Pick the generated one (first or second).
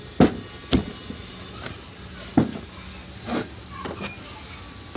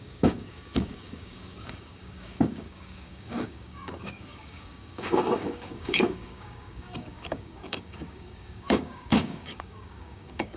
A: second